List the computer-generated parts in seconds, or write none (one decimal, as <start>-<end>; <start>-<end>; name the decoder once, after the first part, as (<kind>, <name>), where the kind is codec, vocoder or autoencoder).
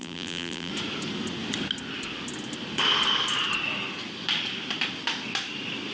0.0-0.7 (vocoder, BigVGAN v2)